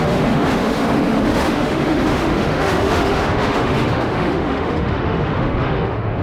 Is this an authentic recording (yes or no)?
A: no